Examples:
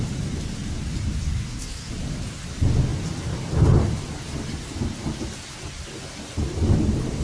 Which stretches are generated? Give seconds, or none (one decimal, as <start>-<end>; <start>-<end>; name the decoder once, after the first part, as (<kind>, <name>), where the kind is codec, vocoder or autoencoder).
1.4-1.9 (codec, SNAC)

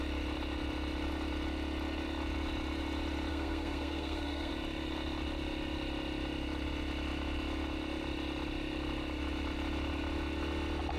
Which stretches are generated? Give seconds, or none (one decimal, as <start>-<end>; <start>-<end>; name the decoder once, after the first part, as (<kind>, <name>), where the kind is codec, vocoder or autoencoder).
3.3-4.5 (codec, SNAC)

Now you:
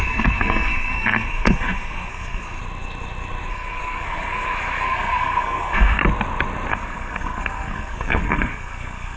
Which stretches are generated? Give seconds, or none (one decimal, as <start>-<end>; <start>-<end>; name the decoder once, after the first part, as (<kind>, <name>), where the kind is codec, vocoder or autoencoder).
0.0-2.6 (codec, SNAC); 3.5-6.0; 6.7-9.2